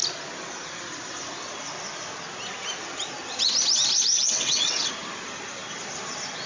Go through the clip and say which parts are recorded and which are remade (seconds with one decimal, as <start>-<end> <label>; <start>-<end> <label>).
0.0-4.1 recorded; 4.1-4.9 remade; 4.9-6.5 recorded